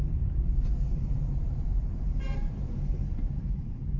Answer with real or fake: fake